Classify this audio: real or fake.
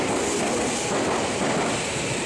real